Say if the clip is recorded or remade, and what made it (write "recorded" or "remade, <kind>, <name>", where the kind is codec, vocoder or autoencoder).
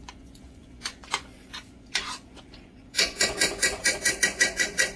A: remade, vocoder, Vocos